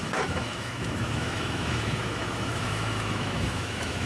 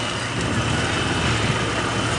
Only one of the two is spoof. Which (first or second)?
first